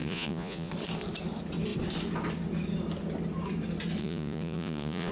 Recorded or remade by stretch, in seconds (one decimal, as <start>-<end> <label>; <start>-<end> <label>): 0.0-0.7 remade; 0.7-4.0 recorded; 4.0-5.1 remade

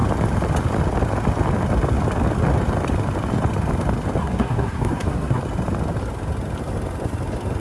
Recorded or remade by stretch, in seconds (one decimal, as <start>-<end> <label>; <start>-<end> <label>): 0.0-4.2 recorded; 4.2-5.4 remade; 5.4-7.6 recorded

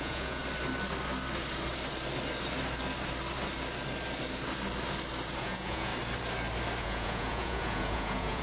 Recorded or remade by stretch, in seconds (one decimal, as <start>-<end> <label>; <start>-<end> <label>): 0.0-0.4 remade; 0.4-5.4 recorded; 5.4-5.9 remade; 5.9-6.8 recorded; 6.8-8.4 remade

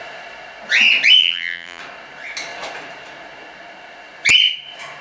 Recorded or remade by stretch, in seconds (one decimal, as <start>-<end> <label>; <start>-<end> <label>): 0.0-1.2 recorded; 1.2-1.8 remade; 1.8-5.0 recorded

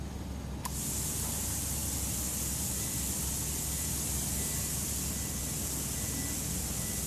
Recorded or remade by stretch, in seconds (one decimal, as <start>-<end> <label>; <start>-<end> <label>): 0.0-7.1 recorded

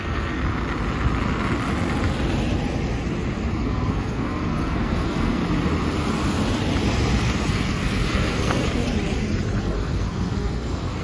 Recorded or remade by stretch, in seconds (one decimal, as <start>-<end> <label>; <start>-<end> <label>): 0.0-0.4 remade; 0.4-3.5 recorded; 3.5-5.4 remade; 5.4-7.5 recorded; 7.5-8.8 remade; 8.8-9.6 recorded; 9.6-11.0 remade